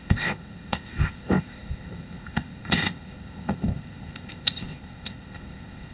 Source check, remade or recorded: remade